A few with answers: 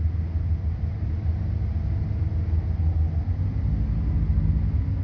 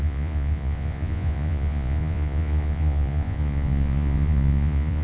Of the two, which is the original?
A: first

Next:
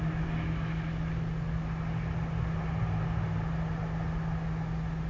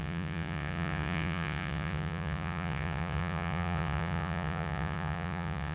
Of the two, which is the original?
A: first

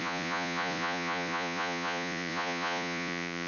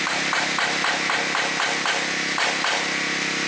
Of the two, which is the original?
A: second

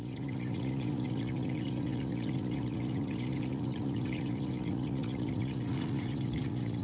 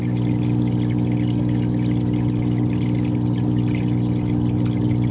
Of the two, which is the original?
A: second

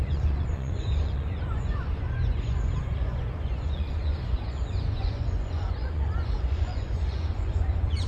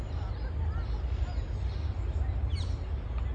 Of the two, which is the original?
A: second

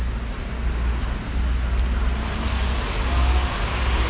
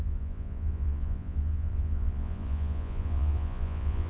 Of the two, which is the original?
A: first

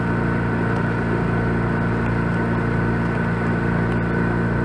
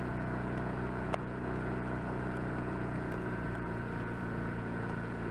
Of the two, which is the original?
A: first